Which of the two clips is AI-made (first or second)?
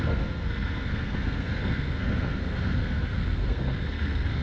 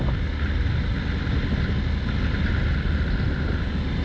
first